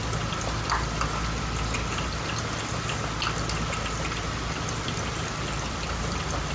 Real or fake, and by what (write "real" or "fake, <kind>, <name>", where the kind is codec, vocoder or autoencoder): real